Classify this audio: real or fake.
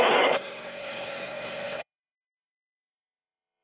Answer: fake